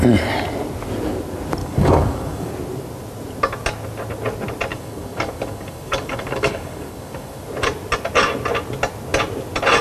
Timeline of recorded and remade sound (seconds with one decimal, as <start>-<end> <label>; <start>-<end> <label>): 0.0-1.6 recorded; 1.6-2.5 remade; 2.5-4.7 recorded; 4.7-7.4 remade; 7.4-9.8 recorded